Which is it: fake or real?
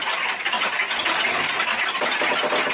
real